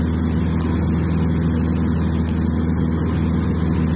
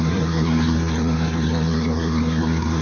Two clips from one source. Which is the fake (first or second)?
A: second